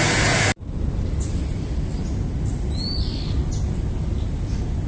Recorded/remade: recorded